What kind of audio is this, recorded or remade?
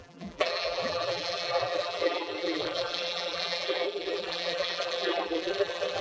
remade